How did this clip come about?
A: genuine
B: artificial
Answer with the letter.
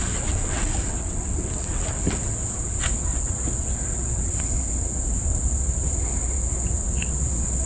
B